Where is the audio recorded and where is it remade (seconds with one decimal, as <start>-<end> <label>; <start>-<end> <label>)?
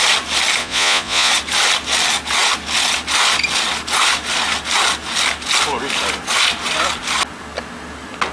0.0-0.6 recorded; 0.6-1.3 remade; 1.3-8.3 recorded